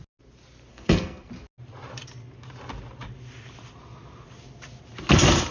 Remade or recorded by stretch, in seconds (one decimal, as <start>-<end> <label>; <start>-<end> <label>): 0.0-0.7 recorded; 0.7-1.3 remade; 1.3-5.5 recorded